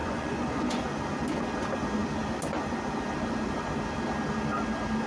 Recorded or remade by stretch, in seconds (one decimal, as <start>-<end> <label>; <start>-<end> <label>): 0.0-0.8 remade; 0.8-5.1 recorded